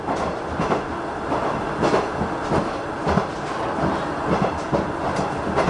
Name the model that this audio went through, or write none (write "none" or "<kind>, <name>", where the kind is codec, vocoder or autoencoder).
none